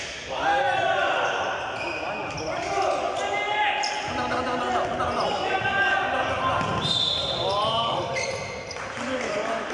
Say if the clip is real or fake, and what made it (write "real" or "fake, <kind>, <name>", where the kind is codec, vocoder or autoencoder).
real